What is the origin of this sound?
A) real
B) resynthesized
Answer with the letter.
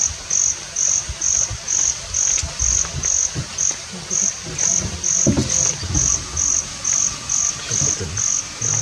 A